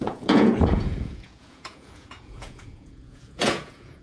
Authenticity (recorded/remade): remade